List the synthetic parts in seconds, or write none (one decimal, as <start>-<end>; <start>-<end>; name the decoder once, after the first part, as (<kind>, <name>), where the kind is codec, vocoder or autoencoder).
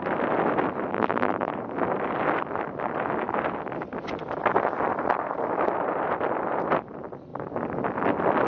0.9-1.5 (vocoder, BigVGAN v2)